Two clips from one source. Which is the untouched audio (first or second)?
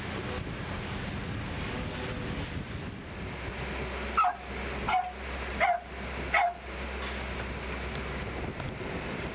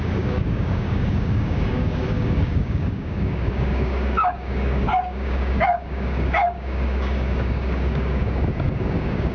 first